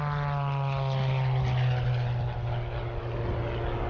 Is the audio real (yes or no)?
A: yes